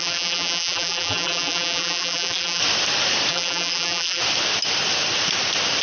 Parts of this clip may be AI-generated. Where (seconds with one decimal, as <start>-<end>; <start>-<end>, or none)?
0.0-2.6; 3.3-4.2

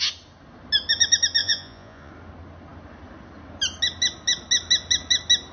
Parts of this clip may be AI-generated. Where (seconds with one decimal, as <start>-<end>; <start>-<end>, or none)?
1.4-2.1

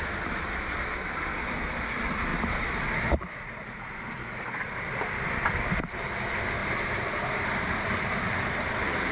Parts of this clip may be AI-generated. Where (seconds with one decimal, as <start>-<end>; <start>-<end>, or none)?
6.6-8.0

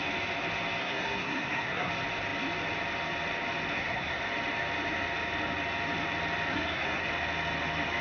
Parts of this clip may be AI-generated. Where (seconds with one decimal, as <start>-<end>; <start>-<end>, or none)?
0.8-1.9; 3.7-4.2; 6.5-7.1